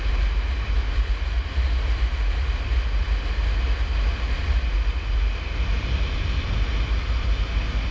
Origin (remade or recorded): recorded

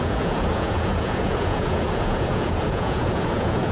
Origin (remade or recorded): remade